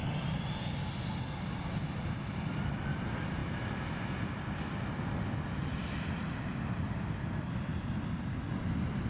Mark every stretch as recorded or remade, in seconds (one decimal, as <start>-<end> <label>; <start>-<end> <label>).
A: 0.0-3.4 remade; 3.4-4.4 recorded; 4.4-7.7 remade; 7.7-8.6 recorded; 8.6-9.1 remade